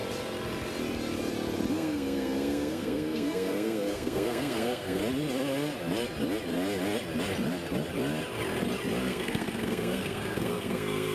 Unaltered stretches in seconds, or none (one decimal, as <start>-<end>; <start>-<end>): 0.0-1.7; 5.0-9.0